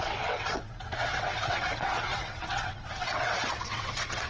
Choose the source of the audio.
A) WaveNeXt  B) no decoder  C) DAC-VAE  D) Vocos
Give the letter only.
A